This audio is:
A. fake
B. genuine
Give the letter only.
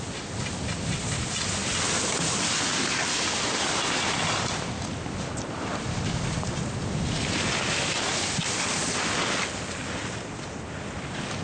B